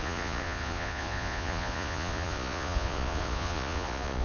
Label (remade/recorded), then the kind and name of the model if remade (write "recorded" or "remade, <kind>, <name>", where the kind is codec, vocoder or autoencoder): remade, vocoder, Vocos